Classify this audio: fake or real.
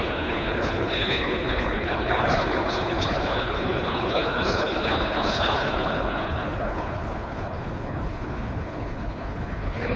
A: fake